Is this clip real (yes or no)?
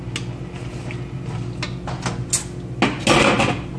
yes